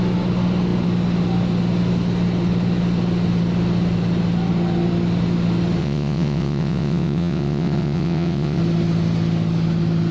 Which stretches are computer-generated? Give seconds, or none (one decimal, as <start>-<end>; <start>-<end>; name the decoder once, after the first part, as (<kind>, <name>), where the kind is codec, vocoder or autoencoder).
5.8-8.6 (vocoder, WaveNeXt)